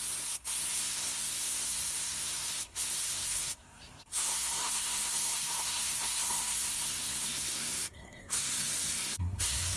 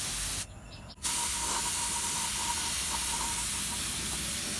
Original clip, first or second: second